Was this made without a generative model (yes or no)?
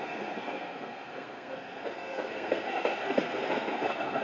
no